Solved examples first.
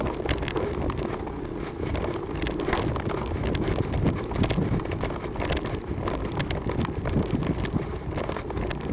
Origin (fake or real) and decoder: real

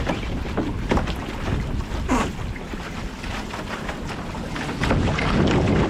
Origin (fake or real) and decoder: real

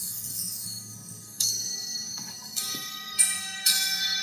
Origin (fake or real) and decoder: fake, codec, SNAC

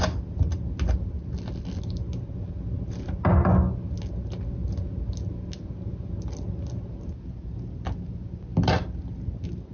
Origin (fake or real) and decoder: real